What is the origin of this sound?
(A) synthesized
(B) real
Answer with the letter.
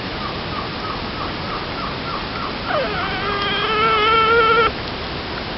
B